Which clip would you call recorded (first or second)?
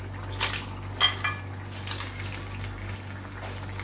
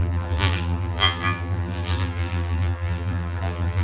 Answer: first